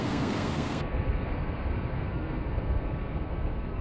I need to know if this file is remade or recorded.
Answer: remade